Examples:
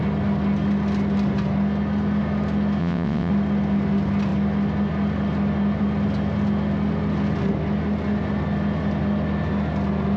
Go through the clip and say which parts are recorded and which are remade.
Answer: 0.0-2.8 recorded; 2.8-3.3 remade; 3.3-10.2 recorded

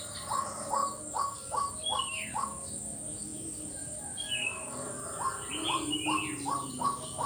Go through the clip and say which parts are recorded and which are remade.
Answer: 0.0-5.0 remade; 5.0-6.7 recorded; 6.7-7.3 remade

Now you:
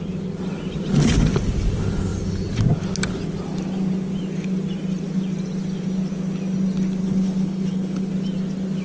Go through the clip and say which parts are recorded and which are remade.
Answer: 0.0-7.0 recorded; 7.0-8.1 remade; 8.1-8.8 recorded